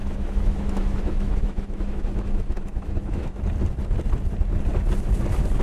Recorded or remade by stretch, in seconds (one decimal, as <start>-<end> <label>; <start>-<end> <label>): 0.0-3.4 remade; 3.4-5.6 recorded